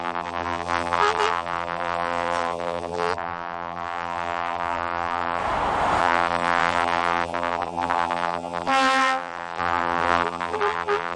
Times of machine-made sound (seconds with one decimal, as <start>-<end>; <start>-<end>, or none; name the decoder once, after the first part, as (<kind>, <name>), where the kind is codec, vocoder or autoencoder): 0.0-5.4 (vocoder, BigVGAN v2); 6.0-11.2